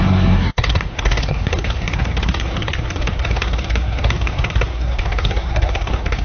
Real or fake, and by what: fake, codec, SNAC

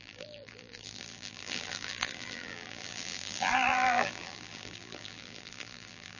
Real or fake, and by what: fake, vocoder, BigVGAN v2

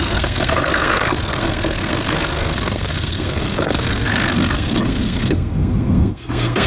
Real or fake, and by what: fake, codec, SNAC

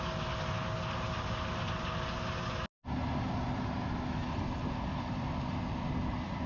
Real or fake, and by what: real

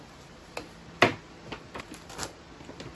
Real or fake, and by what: real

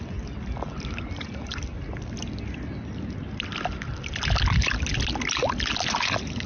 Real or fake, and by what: real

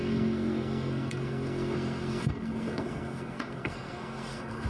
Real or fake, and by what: fake, codec, SNAC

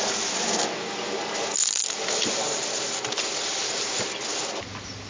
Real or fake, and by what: real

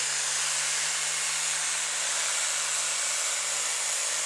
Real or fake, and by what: real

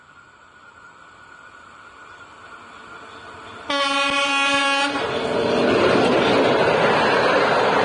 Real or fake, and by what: real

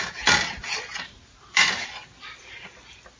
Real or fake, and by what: real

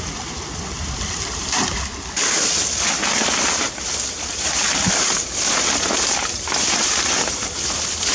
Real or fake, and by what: real